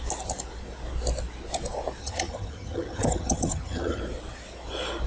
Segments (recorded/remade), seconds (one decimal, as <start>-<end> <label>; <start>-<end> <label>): 0.0-2.0 recorded; 2.0-4.0 remade; 4.0-5.1 recorded